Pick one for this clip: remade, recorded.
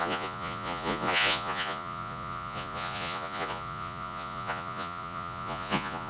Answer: remade